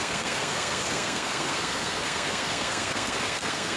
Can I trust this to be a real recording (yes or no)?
no